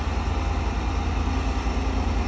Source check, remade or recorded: recorded